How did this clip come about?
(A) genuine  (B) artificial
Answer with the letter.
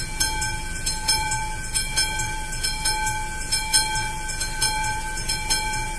B